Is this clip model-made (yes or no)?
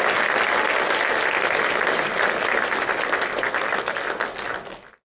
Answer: no